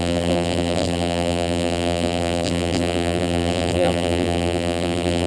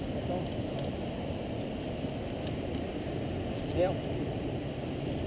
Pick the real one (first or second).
second